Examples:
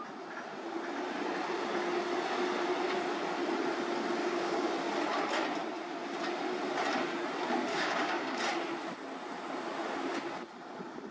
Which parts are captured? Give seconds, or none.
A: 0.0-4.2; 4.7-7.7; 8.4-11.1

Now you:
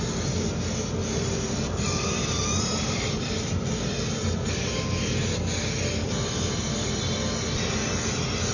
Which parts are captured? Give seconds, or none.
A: 0.0-1.0; 4.1-6.0; 6.7-8.5

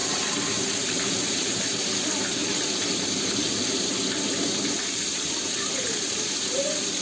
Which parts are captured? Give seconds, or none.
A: none

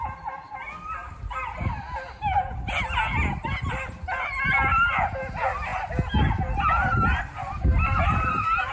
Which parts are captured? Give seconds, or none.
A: 0.0-7.7